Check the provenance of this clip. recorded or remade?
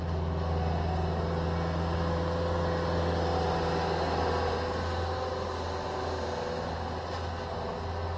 recorded